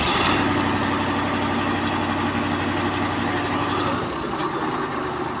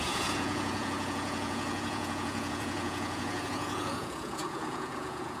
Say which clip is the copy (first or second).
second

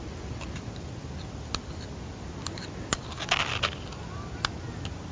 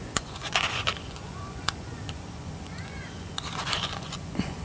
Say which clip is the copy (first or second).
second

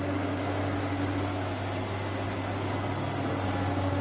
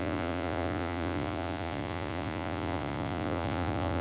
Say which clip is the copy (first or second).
second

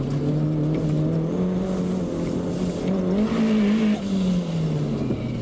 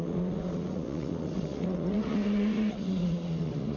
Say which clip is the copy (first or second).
second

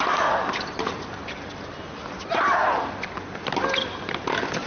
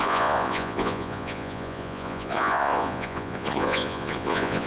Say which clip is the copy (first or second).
second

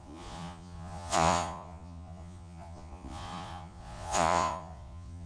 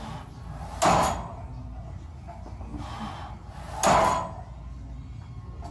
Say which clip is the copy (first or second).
first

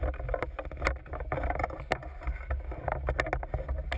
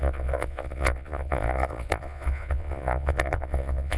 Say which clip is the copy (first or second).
second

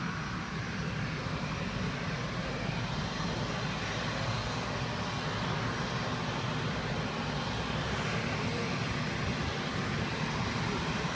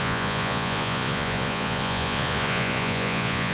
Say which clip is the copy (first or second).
second